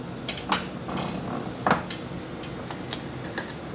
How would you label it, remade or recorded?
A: recorded